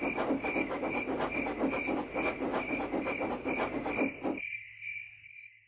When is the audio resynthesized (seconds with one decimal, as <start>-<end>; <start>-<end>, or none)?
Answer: none